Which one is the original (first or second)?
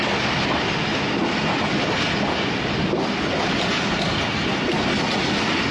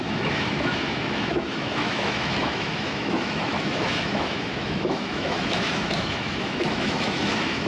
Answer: first